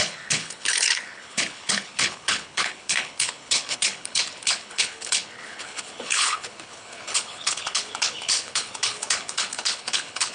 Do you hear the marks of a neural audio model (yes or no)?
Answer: yes